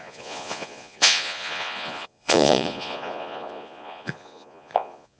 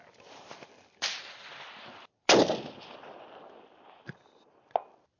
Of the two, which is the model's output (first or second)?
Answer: first